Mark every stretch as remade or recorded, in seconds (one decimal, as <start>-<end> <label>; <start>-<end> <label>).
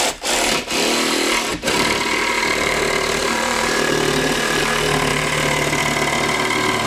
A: 0.0-1.5 recorded; 1.5-4.6 remade; 4.6-5.1 recorded; 5.1-5.8 remade; 5.8-6.9 recorded